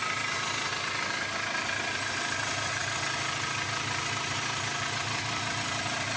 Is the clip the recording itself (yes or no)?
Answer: yes